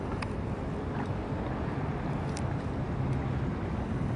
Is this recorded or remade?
recorded